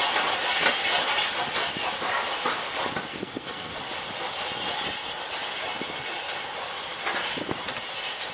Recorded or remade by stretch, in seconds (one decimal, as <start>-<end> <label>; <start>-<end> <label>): 0.0-3.1 recorded; 3.1-3.8 remade; 3.8-8.3 recorded